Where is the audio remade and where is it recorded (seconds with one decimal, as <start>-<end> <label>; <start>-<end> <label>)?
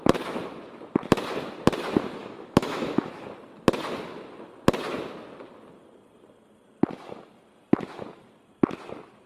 0.0-2.2 recorded; 2.2-3.1 remade; 3.1-9.3 recorded